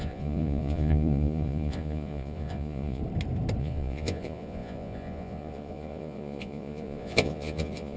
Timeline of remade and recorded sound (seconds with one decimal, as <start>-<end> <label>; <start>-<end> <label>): 0.0-3.0 remade; 3.0-3.6 recorded; 3.6-8.0 remade